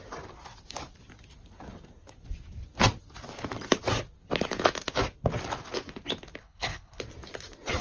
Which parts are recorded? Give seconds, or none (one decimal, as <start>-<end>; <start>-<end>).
0.0-6.4; 7.0-7.8